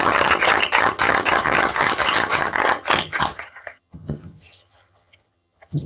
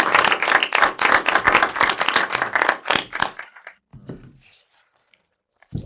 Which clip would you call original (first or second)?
second